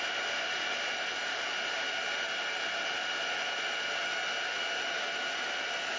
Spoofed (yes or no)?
no